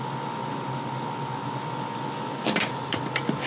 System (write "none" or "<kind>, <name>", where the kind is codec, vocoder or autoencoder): none